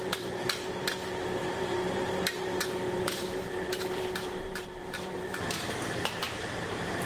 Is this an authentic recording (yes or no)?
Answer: no